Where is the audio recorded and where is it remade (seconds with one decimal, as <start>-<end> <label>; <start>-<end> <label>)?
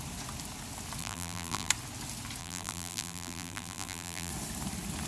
0.0-1.0 recorded; 1.0-1.7 remade; 1.7-2.4 recorded; 2.4-4.3 remade; 4.3-5.1 recorded